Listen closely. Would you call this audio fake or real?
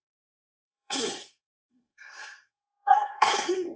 fake